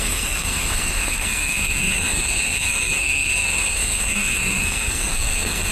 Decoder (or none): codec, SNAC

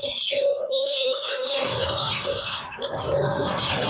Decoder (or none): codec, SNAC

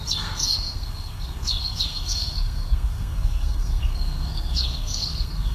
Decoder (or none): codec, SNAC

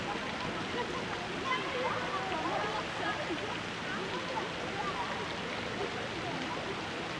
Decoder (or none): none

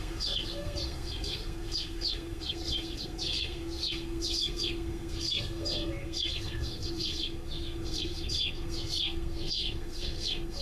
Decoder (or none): codec, SNAC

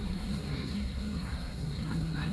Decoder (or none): codec, SNAC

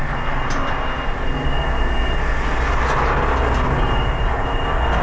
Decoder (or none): none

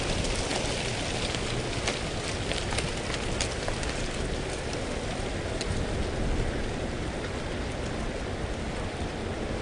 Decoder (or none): none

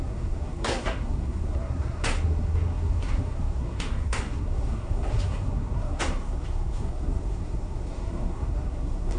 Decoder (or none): codec, SNAC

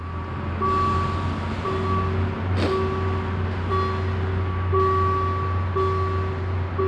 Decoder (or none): none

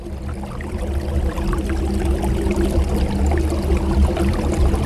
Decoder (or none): none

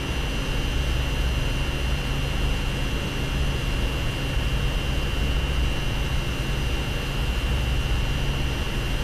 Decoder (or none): none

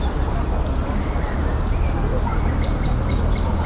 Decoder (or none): none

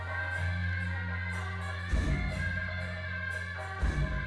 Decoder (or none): none